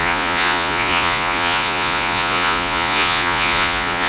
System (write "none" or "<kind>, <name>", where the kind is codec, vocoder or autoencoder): vocoder, Vocos